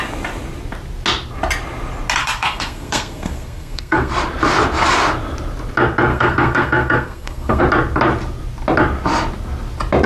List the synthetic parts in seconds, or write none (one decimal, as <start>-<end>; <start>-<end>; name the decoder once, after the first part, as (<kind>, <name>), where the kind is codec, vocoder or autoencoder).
2.2-4.1 (codec, SNAC); 6.1-7.6